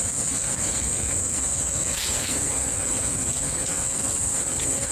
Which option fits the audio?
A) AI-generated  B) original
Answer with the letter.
A